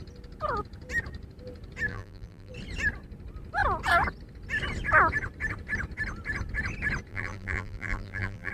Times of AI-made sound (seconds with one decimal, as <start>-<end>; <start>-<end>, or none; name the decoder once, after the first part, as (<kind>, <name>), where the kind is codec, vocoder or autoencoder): 1.9-2.5 (vocoder, BigVGAN v2); 7.1-8.5